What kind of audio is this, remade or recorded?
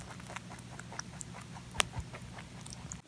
recorded